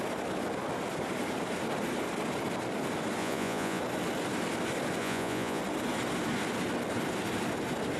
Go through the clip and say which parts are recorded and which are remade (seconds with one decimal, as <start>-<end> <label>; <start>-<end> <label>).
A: 0.0-3.2 recorded; 3.2-3.8 remade; 3.8-5.0 recorded; 5.0-5.6 remade; 5.6-8.0 recorded